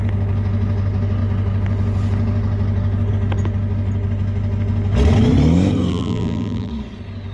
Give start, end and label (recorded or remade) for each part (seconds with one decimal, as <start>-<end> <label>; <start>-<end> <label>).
0.0-5.9 recorded; 5.9-6.7 remade; 6.7-7.3 recorded